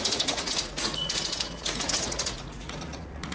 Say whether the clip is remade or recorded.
remade